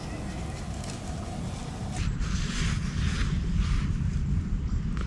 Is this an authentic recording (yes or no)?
yes